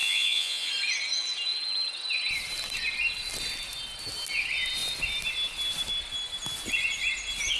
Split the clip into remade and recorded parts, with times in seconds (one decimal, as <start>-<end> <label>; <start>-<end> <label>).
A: 0.0-0.7 remade; 0.7-7.6 recorded